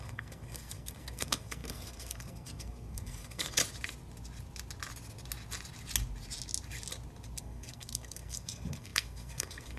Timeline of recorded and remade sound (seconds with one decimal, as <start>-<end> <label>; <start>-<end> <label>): 0.0-3.6 remade; 3.6-7.4 recorded; 7.4-9.8 remade